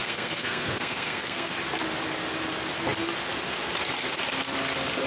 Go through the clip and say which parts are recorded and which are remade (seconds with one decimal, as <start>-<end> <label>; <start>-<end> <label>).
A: 0.0-1.5 remade; 1.5-5.1 recorded